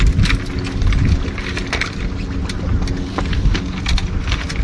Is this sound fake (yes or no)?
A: no